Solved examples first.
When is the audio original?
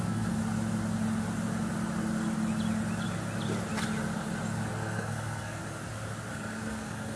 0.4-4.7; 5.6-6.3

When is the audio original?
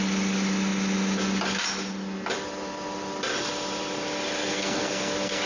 0.0-4.4